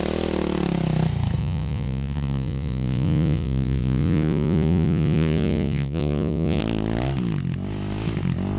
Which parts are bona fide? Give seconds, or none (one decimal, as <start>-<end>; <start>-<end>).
0.0-1.4; 6.6-8.6